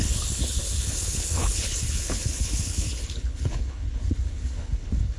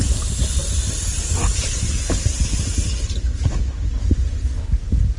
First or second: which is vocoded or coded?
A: first